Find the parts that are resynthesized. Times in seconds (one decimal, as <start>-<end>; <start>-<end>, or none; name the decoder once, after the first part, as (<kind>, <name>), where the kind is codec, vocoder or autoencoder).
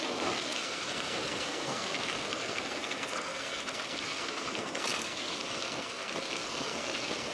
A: 0.0-7.3 (codec, SNAC)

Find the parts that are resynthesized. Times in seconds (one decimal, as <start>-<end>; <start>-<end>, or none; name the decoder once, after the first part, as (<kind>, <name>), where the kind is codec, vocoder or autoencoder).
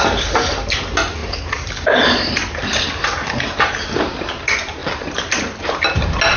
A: 1.2-2.9 (vocoder, BigVGAN v2); 4.8-5.6